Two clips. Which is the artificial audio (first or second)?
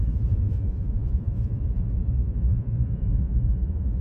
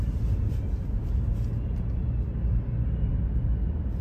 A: first